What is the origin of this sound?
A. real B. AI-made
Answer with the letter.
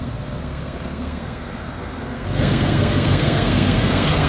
B